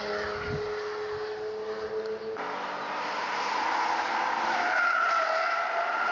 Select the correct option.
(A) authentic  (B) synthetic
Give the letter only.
A